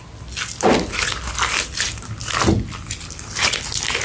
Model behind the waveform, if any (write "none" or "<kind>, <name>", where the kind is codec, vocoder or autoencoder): none